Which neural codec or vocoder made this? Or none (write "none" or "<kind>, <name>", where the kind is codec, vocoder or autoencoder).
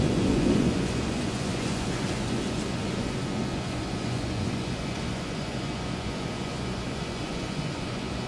vocoder, Vocos